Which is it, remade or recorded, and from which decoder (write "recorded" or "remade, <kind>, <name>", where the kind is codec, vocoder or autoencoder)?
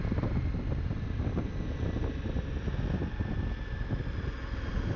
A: recorded